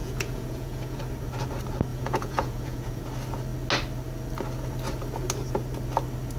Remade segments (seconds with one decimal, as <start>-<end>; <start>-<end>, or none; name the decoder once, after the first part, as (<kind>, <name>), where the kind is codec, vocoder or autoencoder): 0.0-1.0 (vocoder, Vocos); 1.9-3.0